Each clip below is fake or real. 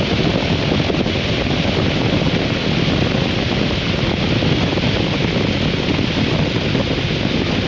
real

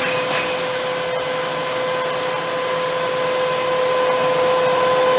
real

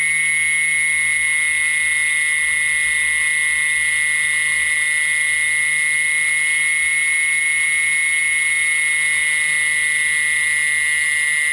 real